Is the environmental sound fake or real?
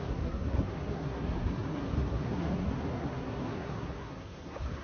fake